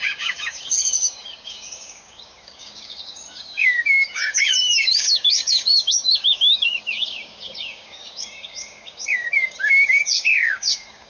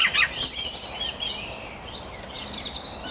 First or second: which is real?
second